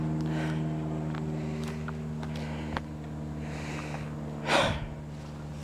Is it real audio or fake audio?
real